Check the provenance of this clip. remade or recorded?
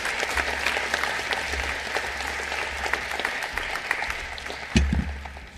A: recorded